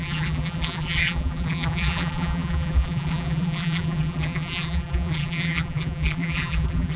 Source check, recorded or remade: remade